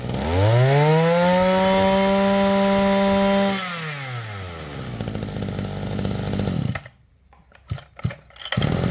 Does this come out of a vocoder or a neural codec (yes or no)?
no